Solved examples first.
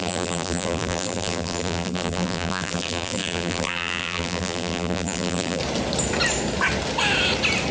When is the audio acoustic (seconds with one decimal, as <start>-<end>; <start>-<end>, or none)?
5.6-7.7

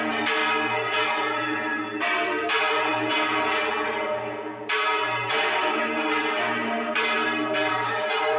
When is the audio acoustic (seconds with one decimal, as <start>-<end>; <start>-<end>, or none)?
0.4-1.0

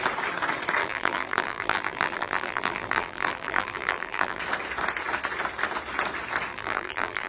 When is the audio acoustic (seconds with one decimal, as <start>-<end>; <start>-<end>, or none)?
0.0-0.8; 4.4-6.5

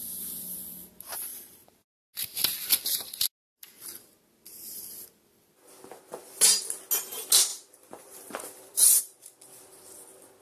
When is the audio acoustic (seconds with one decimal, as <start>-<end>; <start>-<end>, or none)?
0.0-7.5; 9.0-10.4

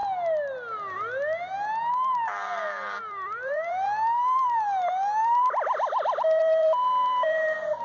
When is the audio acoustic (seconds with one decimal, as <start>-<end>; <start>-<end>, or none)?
0.0-1.9